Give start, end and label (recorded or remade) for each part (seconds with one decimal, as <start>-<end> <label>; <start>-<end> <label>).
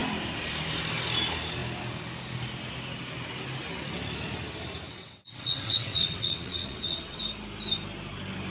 0.0-4.9 recorded; 4.9-7.2 remade; 7.2-8.5 recorded